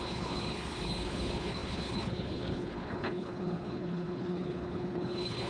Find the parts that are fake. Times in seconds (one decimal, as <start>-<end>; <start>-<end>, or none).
0.0-5.5